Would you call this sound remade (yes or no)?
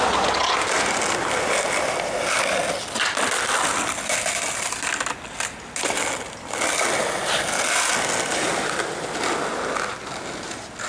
no